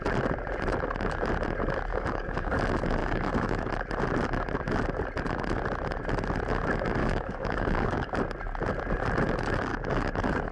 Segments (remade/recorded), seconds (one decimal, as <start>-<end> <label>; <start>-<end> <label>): 0.0-1.9 recorded; 1.9-2.6 remade; 2.6-3.0 recorded; 3.0-3.7 remade; 3.7-7.0 recorded; 7.0-8.1 remade; 8.1-9.7 recorded; 9.7-10.5 remade